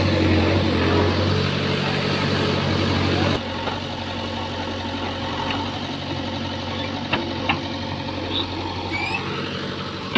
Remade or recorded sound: recorded